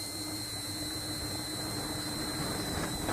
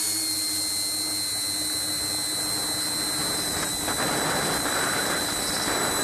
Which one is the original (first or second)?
second